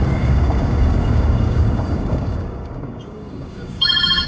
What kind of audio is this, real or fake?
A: fake